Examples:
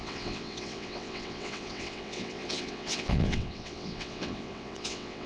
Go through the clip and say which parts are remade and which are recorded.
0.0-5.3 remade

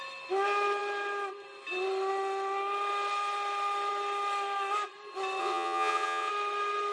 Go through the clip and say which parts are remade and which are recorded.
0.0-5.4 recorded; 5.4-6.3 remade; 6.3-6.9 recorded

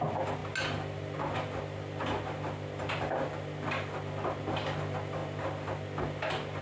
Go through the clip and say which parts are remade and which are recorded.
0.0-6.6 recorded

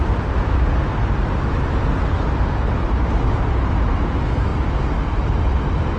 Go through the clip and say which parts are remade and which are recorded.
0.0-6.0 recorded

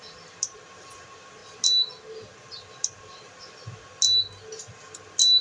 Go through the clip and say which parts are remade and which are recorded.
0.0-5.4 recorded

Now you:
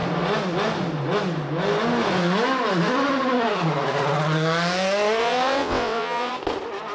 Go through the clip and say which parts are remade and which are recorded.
0.0-5.2 recorded; 5.2-6.3 remade; 6.3-6.9 recorded